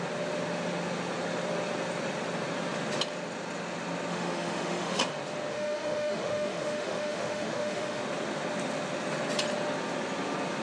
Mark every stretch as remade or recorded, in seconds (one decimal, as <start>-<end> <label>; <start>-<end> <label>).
0.0-4.1 recorded; 4.1-5.0 remade; 5.0-5.5 recorded; 5.5-8.0 remade; 8.0-10.6 recorded